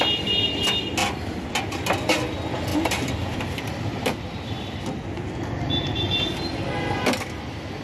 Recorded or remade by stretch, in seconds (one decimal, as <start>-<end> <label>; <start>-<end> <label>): 0.0-2.7 recorded; 2.7-4.8 remade; 4.8-7.8 recorded